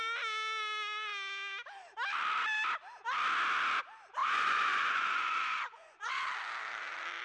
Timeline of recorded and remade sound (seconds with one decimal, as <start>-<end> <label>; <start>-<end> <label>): 0.0-4.2 recorded; 4.2-6.2 remade; 6.2-7.2 recorded